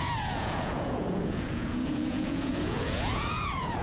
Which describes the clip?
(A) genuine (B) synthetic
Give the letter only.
B